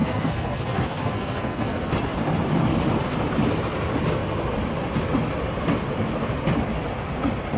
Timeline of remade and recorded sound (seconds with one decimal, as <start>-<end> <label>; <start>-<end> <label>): 0.0-1.9 remade; 1.9-7.6 recorded